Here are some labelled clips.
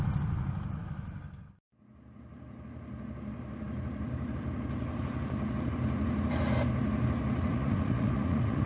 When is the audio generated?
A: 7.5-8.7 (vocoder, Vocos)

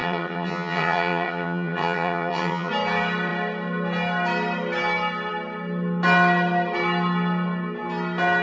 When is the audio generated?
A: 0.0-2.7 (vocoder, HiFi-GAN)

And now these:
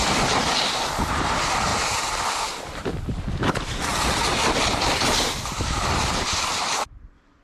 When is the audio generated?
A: 1.0-3.9 (vocoder, BigVGAN v2); 5.3-7.4